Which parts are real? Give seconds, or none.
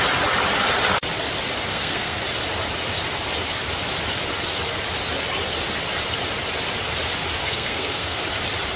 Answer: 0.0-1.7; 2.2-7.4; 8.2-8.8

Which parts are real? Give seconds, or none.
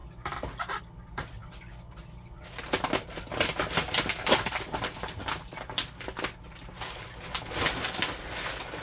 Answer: 0.0-8.8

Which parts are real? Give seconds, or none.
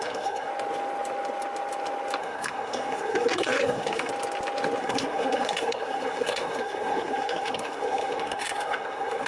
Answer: 0.5-2.2; 4.1-4.8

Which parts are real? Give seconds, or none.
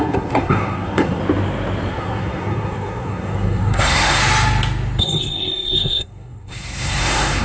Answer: 1.2-1.9; 4.2-5.0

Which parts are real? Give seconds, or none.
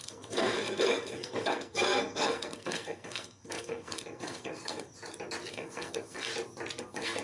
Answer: 4.9-5.5; 6.3-6.8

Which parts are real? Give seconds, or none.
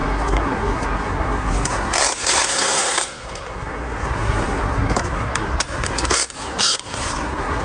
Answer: none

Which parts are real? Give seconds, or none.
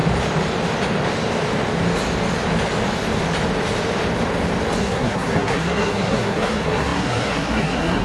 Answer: 0.0-4.8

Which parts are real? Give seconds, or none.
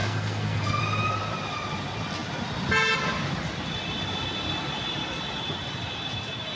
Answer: 0.8-6.6